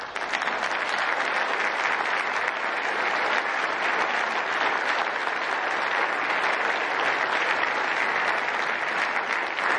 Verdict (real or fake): real